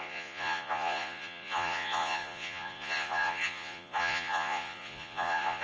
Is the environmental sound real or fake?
fake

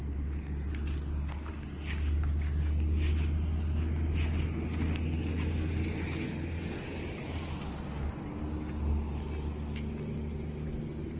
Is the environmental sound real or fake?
real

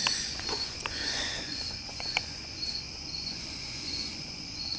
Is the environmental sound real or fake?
fake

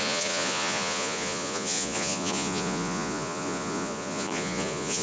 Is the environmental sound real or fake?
fake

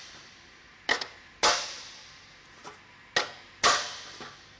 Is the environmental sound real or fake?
real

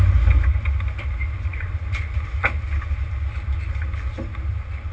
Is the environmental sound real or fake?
real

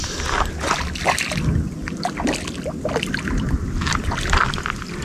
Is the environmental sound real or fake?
real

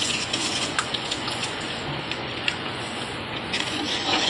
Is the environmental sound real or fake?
fake